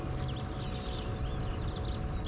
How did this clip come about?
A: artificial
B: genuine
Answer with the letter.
B